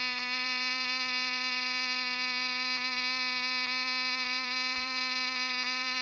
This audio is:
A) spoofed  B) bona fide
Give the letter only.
A